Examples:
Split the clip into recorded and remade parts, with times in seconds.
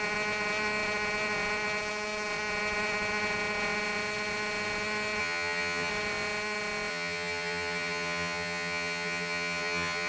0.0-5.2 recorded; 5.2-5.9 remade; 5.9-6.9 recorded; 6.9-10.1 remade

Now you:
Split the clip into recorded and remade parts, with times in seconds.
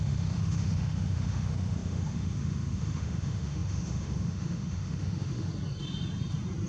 0.0-5.5 remade; 5.5-6.7 recorded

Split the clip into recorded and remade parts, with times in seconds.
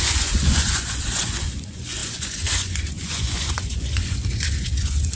0.0-5.2 remade